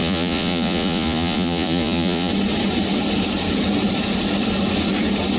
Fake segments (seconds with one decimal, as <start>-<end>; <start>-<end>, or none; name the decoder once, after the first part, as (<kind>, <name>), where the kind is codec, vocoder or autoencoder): 0.0-2.3 (vocoder, Vocos)